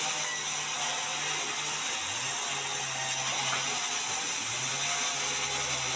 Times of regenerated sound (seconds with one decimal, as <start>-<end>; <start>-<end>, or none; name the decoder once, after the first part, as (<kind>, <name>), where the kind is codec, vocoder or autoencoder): none